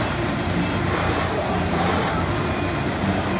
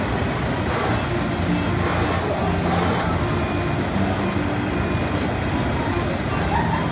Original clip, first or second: second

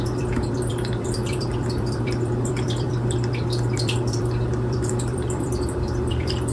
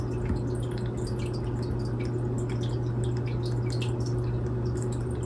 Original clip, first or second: second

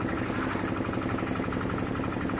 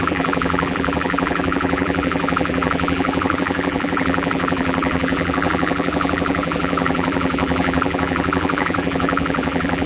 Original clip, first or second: first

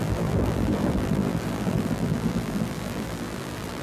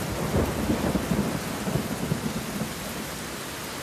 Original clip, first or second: second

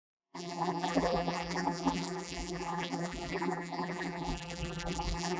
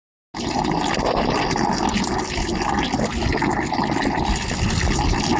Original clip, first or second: second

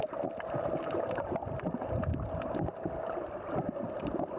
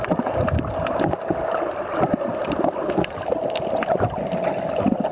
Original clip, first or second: first